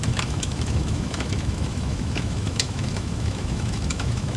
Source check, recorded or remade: remade